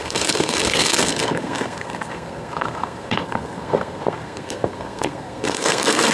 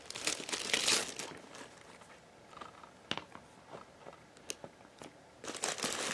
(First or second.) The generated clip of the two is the first